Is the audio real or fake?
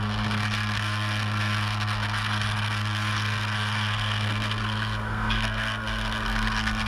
fake